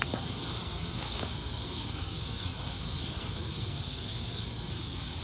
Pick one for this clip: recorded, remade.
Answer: remade